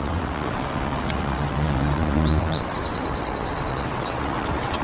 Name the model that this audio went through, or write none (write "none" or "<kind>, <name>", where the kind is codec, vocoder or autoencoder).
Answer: vocoder, WaveNeXt